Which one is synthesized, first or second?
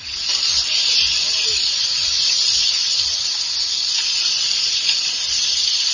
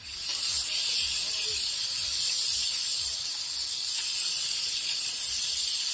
first